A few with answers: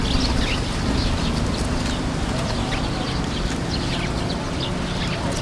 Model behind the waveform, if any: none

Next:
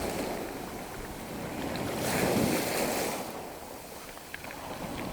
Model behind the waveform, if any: none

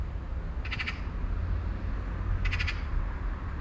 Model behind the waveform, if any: none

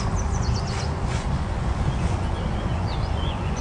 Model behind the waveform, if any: vocoder, Vocos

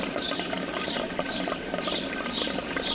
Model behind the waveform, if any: none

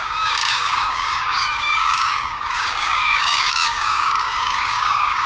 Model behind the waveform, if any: codec, DAC